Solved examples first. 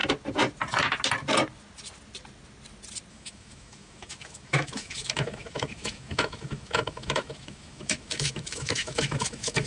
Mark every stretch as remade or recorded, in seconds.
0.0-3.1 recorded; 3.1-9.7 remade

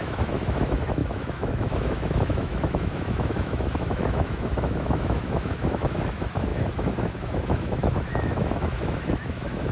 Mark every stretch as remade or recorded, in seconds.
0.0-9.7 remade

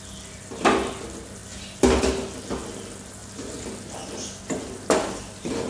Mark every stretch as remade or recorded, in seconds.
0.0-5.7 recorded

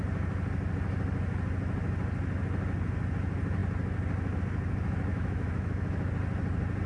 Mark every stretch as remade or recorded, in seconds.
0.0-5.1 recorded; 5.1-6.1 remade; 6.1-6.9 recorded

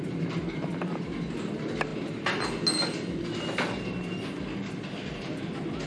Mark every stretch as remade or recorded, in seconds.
0.0-5.9 recorded